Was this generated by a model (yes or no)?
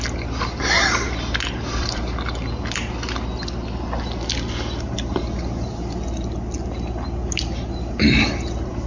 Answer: no